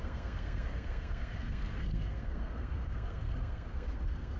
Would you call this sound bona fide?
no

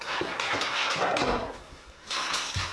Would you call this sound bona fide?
no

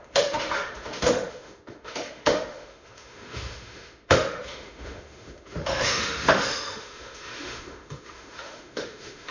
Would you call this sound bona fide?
no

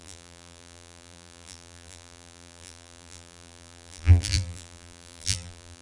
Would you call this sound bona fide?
no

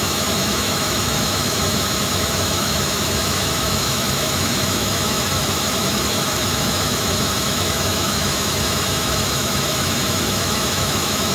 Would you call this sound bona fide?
no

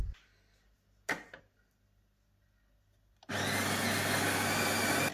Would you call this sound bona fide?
yes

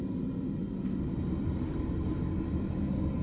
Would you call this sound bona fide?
yes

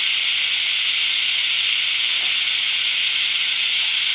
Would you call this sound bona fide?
yes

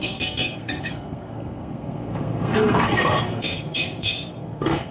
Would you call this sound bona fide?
no